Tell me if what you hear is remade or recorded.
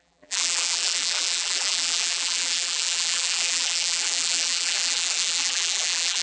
remade